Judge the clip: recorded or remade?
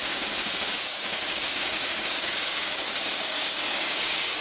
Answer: remade